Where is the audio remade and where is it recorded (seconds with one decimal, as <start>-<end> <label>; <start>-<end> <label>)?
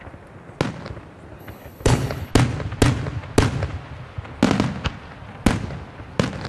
0.0-1.4 recorded; 1.4-2.3 remade; 2.3-6.5 recorded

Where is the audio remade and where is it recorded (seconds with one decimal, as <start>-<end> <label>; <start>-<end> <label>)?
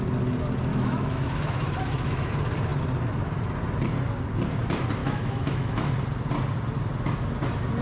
0.0-0.7 recorded; 0.7-2.3 remade; 2.3-5.0 recorded; 5.0-5.9 remade; 5.9-7.8 recorded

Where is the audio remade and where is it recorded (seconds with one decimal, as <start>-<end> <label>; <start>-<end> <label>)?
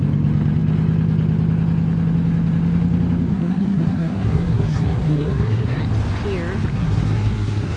0.0-3.3 recorded; 3.3-5.8 remade; 5.8-6.7 recorded; 6.7-7.8 remade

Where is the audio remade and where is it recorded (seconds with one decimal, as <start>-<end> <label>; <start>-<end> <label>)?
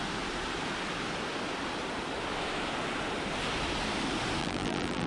0.0-4.4 recorded; 4.4-5.1 remade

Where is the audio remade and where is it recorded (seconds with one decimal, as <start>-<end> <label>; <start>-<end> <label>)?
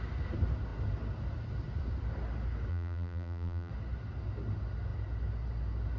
0.0-2.7 recorded; 2.7-3.7 remade; 3.7-6.0 recorded